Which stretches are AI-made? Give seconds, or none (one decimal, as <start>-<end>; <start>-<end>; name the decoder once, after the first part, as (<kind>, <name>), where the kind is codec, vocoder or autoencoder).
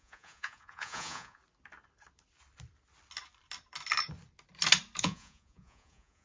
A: 0.0-1.4 (vocoder, Vocos); 5.0-6.2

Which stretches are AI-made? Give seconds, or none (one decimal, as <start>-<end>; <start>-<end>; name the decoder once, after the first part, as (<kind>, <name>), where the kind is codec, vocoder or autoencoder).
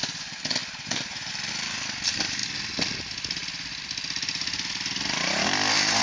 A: none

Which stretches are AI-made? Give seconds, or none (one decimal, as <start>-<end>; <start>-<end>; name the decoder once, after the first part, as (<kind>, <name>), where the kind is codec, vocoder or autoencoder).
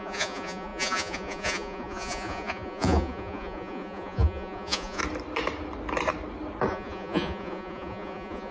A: 0.0-5.0 (vocoder, Vocos); 6.7-8.5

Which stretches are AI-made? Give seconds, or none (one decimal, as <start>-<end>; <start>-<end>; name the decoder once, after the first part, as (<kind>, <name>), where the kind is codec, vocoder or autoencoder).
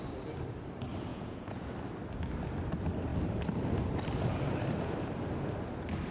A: 1.1-1.7 (vocoder, Vocos)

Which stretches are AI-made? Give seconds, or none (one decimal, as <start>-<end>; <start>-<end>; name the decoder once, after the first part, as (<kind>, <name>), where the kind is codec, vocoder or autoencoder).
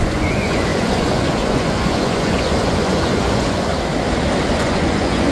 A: 0.0-3.7 (vocoder, Vocos); 4.5-5.3